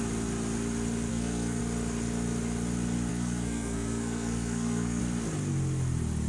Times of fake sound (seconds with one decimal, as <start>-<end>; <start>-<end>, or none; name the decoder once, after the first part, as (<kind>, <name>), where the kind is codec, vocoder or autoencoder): 1.1-1.6 (codec, SNAC); 3.1-5.0